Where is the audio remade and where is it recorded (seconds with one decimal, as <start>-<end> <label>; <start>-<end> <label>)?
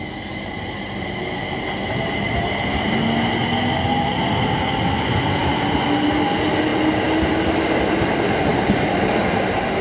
0.0-9.8 recorded